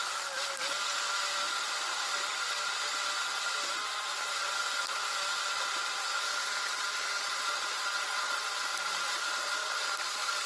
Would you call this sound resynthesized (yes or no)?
no